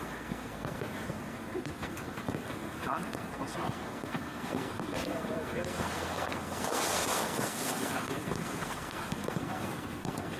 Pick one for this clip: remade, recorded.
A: remade